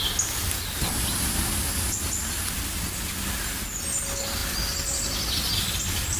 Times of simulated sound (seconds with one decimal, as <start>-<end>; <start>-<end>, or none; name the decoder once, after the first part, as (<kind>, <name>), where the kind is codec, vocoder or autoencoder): none